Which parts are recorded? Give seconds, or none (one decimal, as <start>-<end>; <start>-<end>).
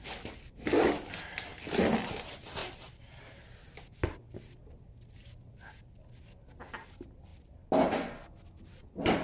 0.0-9.2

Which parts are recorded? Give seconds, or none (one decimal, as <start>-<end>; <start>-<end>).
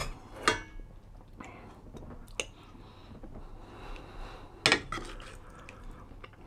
0.0-6.5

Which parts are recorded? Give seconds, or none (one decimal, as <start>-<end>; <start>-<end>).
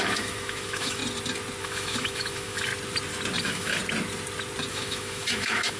1.0-1.6; 2.7-3.4; 3.8-4.7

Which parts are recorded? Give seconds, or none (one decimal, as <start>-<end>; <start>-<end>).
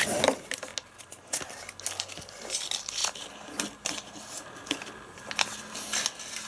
0.0-6.5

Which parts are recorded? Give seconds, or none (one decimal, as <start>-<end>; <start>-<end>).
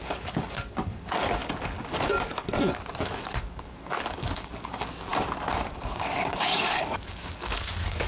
1.4-3.0; 5.1-5.8